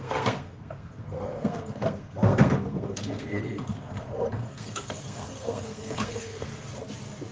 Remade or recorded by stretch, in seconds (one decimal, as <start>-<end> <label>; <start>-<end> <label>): 0.0-6.5 remade; 6.5-7.3 recorded